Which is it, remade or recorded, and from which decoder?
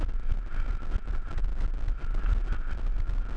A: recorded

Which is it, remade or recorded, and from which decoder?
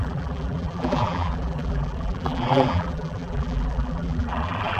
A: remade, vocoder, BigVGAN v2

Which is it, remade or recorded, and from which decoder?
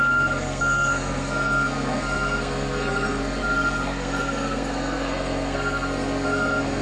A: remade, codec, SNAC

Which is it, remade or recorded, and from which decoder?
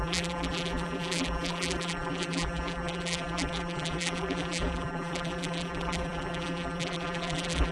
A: remade, vocoder, BigVGAN v2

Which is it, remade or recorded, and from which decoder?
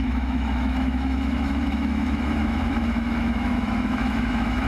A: remade, autoencoder, DAC-VAE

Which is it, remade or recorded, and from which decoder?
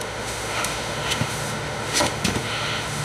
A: remade, autoencoder, DAC-VAE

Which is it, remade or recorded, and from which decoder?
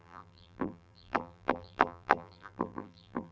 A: remade, vocoder, BigVGAN v2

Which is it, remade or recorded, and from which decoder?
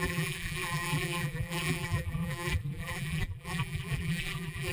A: remade, vocoder, BigVGAN v2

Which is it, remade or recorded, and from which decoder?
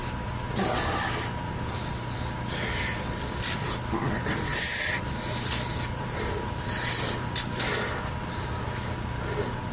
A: recorded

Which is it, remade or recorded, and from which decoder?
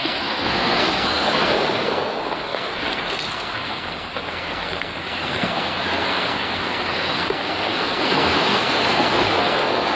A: remade, codec, SNAC